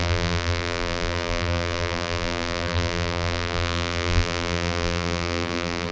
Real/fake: fake